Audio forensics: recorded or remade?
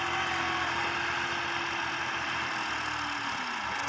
recorded